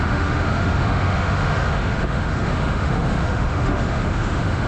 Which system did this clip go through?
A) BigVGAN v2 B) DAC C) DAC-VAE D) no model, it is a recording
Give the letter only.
C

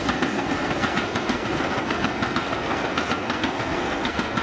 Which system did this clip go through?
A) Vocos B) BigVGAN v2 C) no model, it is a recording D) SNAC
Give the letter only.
D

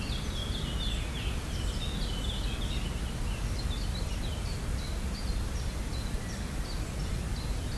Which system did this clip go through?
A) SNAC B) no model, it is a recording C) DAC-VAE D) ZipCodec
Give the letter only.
B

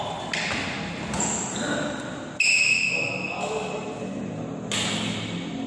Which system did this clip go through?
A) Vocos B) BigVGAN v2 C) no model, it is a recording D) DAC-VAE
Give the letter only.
C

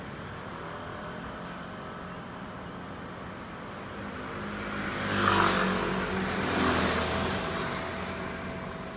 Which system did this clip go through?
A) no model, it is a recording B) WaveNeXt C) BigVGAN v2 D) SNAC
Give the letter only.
A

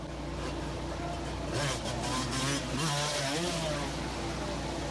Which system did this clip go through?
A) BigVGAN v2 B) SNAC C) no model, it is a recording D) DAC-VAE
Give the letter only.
C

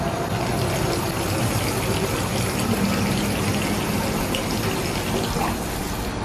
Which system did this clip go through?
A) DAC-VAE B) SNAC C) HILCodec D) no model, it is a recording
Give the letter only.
D